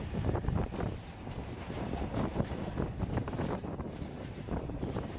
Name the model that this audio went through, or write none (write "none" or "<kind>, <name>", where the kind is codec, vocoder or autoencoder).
vocoder, BigVGAN v2